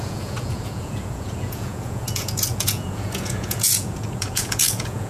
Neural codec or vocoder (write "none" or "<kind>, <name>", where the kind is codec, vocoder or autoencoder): vocoder, Vocos